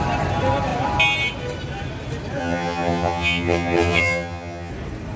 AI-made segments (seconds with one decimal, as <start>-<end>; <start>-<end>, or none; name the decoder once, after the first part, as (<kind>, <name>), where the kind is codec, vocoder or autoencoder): 2.4-4.7 (vocoder, HiFi-GAN)